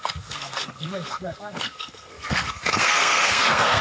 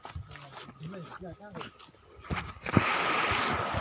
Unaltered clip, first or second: second